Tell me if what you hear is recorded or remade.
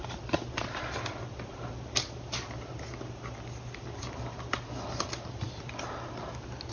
recorded